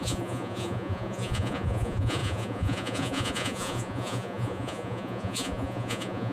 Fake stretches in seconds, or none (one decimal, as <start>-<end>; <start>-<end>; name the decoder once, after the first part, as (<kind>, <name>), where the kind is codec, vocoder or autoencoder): 0.0-6.3 (vocoder, Vocos)

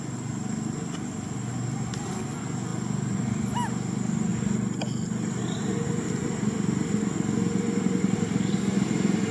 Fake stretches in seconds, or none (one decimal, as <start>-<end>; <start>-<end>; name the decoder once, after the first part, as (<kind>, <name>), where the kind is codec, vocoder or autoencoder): none

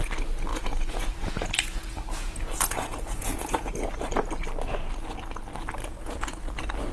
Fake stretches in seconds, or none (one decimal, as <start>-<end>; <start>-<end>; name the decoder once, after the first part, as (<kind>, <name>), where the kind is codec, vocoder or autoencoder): 0.5-3.7 (vocoder, Vocos); 5.8-6.5